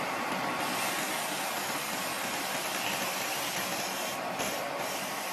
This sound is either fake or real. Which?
real